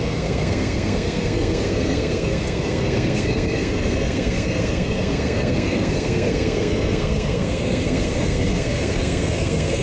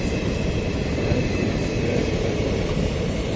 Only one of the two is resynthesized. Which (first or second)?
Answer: first